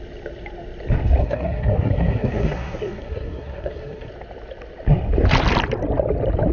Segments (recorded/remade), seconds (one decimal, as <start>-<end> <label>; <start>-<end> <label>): 0.0-1.2 recorded; 1.2-4.1 remade; 4.1-6.5 recorded